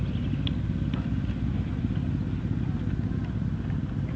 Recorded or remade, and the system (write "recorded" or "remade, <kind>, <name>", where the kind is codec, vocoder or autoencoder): recorded